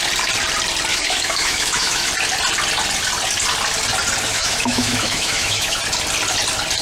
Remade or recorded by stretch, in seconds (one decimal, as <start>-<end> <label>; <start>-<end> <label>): 0.0-0.9 recorded; 0.9-2.1 remade; 2.1-4.3 recorded; 4.3-5.8 remade; 5.8-6.8 recorded